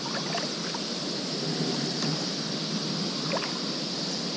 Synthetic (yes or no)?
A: no